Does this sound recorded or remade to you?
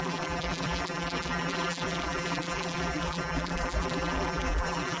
remade